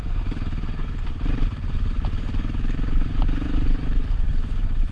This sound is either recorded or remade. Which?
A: remade